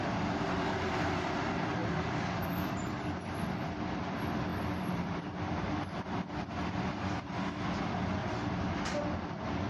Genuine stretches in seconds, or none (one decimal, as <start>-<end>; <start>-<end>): 0.0-1.8; 2.9-4.5; 5.2-8.2; 8.7-9.7